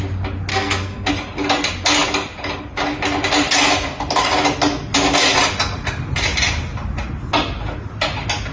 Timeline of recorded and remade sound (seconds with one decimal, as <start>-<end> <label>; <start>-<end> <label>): 0.0-0.5 recorded; 0.5-1.1 remade; 1.1-8.5 recorded